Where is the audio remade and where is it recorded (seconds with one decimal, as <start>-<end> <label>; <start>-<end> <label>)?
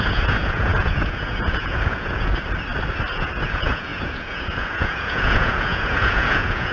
0.0-2.3 remade; 2.3-3.1 recorded; 3.1-6.7 remade